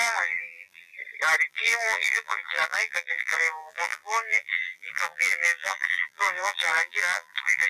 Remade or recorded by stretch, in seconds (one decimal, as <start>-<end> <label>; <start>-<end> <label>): 0.0-0.9 remade; 0.9-1.5 recorded; 1.5-7.7 remade